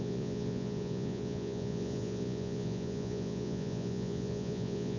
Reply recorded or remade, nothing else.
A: remade